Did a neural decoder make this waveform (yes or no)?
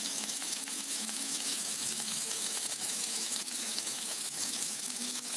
yes